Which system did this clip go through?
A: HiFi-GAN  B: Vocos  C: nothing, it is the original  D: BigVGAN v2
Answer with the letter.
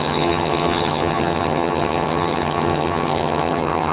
A